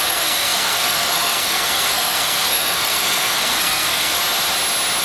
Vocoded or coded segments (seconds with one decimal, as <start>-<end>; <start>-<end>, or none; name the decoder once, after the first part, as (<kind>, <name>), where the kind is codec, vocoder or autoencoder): 0.0-4.2 (codec, SNAC)